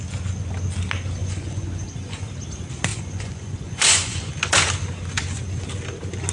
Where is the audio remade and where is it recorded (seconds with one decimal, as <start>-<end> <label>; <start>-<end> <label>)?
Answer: 0.0-1.2 recorded; 1.2-2.3 remade; 2.3-2.9 recorded; 2.9-4.3 remade; 4.3-6.3 recorded